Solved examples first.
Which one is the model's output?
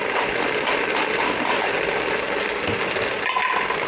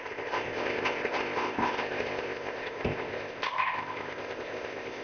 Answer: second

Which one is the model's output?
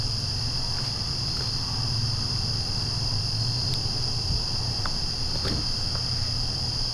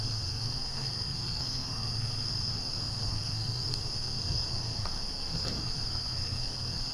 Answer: second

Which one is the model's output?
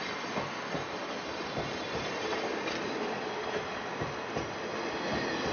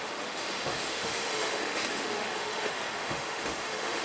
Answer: second